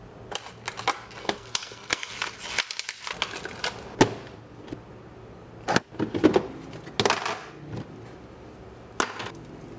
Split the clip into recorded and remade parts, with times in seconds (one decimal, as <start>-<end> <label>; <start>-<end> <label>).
0.0-1.2 recorded; 1.2-2.1 remade; 2.1-9.8 recorded